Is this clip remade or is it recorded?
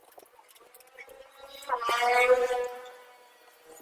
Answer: recorded